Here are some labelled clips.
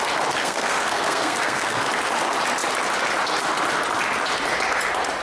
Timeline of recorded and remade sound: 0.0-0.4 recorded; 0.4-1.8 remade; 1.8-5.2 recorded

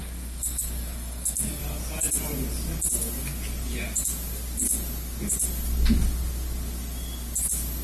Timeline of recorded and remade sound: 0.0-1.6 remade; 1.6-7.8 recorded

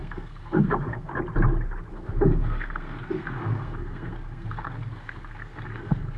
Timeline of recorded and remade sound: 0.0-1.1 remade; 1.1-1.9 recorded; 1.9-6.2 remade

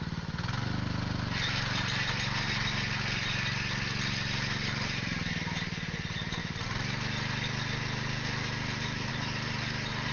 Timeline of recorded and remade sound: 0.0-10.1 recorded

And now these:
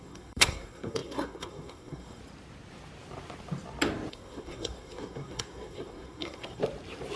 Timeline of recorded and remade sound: 0.0-2.2 remade; 2.2-4.1 recorded; 4.1-6.6 remade; 6.6-7.2 recorded